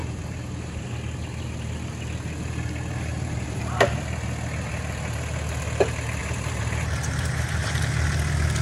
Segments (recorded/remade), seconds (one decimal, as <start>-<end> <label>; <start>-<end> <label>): 0.0-0.9 remade; 0.9-3.1 recorded; 3.1-3.6 remade; 3.6-6.2 recorded; 6.2-7.8 remade; 7.8-8.6 recorded